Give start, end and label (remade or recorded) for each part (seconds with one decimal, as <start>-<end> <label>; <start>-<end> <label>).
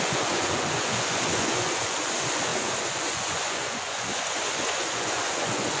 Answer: 0.0-5.8 remade